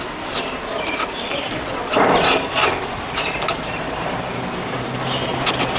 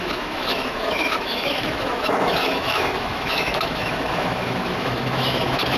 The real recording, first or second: first